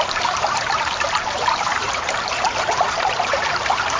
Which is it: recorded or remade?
remade